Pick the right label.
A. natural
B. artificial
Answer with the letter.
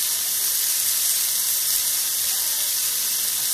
A